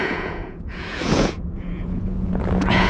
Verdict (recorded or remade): remade